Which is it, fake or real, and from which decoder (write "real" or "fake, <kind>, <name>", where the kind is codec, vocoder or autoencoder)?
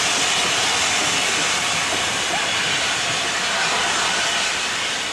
real